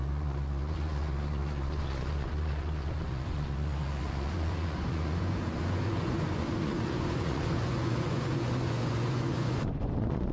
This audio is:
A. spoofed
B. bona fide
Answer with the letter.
A